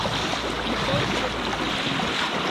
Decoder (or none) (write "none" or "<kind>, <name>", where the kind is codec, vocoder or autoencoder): none